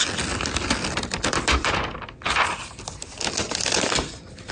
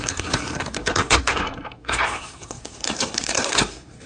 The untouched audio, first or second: first